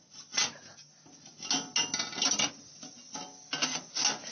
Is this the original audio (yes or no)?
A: yes